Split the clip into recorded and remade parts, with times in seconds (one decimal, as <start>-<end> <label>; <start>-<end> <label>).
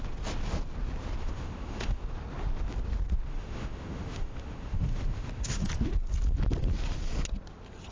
0.0-1.2 recorded; 1.2-2.0 remade; 2.0-3.3 recorded; 3.3-5.7 remade; 5.7-7.9 recorded